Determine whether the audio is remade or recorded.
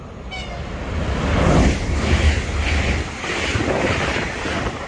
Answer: recorded